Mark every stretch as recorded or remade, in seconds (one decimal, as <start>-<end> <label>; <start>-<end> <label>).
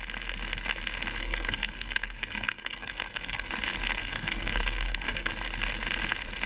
0.0-1.2 recorded; 1.2-3.5 remade; 3.5-4.0 recorded; 4.0-5.3 remade; 5.3-6.5 recorded